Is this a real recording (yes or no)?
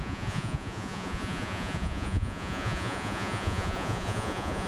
no